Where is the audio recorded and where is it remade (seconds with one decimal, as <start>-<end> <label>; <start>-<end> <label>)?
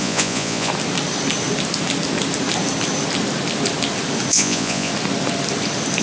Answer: 0.0-0.7 remade; 0.7-4.3 recorded; 4.3-4.9 remade; 4.9-6.0 recorded